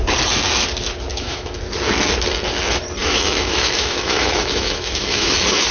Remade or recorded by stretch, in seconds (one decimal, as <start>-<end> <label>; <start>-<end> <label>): 0.0-1.1 recorded; 1.1-1.6 remade; 1.6-3.0 recorded; 3.0-5.3 remade; 5.3-5.7 recorded